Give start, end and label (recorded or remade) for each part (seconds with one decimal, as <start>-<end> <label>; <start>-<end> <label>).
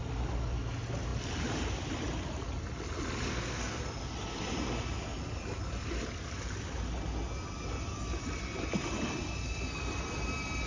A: 0.0-3.3 recorded; 3.3-3.8 remade; 3.8-10.7 recorded